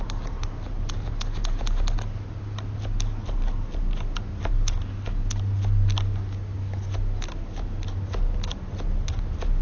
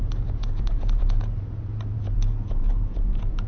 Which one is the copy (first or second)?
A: second